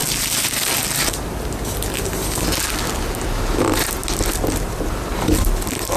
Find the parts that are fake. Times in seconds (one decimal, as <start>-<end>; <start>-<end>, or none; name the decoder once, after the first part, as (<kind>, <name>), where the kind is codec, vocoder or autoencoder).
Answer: none